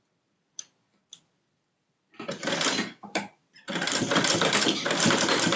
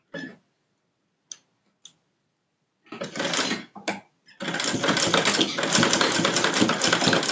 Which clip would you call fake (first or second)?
first